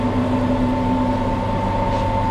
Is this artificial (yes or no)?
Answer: no